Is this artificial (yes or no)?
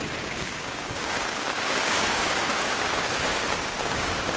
yes